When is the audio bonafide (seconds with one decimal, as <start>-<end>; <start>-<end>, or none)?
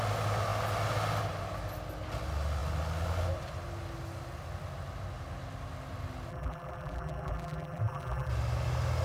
0.0-6.3; 8.3-9.0